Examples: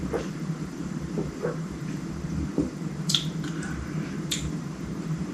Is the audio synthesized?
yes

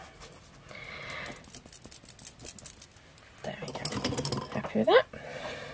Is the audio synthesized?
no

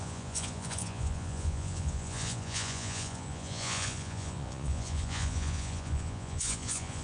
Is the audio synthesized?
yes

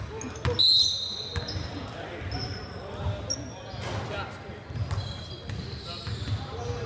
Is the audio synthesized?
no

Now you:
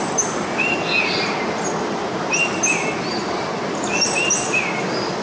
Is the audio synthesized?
no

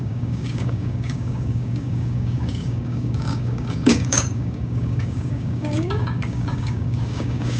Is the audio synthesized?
yes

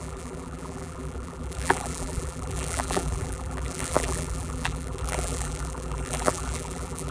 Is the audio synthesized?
yes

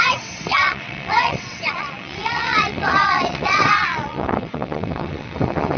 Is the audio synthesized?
yes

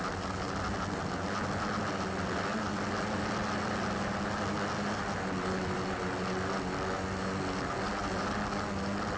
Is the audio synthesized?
no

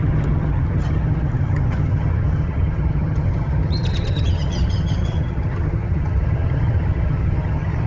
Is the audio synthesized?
yes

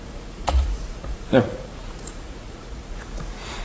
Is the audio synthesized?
yes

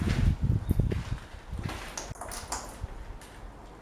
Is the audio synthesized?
no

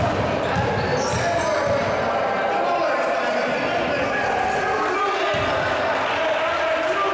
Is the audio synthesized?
no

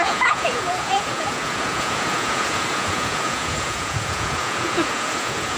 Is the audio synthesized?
yes